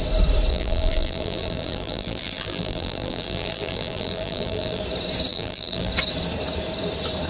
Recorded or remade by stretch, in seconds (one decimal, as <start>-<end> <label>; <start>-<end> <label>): 0.0-0.5 recorded; 0.5-4.8 remade; 4.8-5.3 recorded; 5.3-5.9 remade; 5.9-7.3 recorded